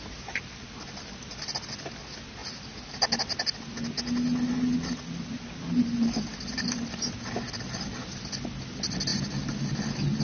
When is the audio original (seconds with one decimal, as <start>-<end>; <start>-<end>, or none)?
0.0-10.2